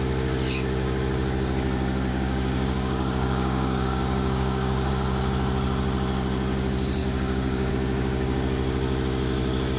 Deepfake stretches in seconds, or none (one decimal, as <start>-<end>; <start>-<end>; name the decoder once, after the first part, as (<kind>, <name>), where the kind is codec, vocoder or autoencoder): 2.1-4.9 (codec, DAC); 7.0-7.7